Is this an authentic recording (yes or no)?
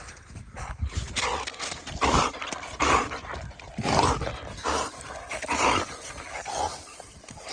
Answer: yes